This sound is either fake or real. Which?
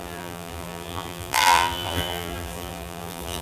fake